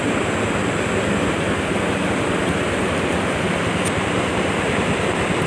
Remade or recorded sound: recorded